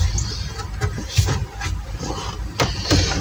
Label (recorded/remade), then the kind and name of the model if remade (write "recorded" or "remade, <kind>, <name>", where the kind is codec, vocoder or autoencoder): recorded